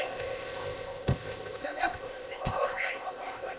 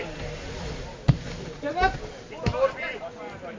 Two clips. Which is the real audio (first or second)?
second